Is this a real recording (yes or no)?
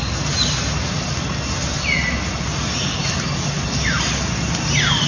yes